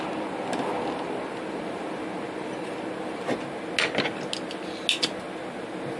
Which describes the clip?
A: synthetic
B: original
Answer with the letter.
B